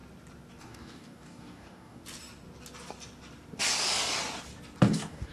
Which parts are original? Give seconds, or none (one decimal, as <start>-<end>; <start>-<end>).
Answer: 0.0-0.6; 2.0-4.8